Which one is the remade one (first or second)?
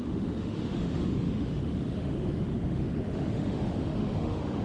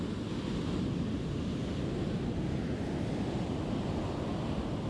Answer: first